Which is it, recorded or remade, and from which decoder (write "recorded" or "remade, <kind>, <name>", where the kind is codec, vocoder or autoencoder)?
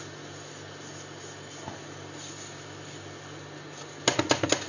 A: recorded